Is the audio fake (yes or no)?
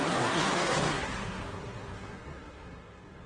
yes